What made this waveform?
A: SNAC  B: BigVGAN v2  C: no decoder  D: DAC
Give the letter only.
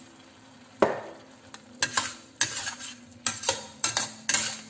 C